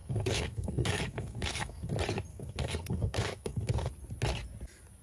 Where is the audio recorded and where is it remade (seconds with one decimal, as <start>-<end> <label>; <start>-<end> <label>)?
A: 0.0-1.9 remade; 1.9-2.3 recorded; 2.3-3.9 remade; 3.9-5.0 recorded